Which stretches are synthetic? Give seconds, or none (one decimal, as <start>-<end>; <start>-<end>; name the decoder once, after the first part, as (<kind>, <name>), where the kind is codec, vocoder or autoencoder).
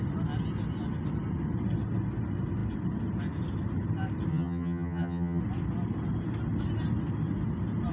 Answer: 4.3-5.4 (vocoder, HiFi-GAN)